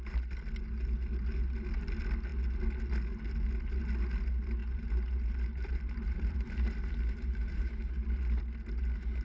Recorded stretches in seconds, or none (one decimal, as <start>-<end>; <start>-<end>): 0.0-4.6; 8.4-9.2